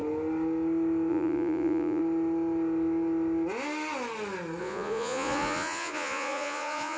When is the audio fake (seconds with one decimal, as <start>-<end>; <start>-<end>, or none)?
1.1-2.0; 4.6-7.0